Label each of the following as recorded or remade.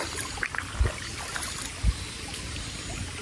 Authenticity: recorded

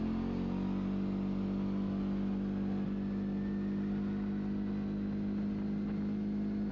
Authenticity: recorded